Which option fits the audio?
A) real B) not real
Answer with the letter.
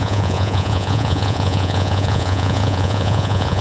B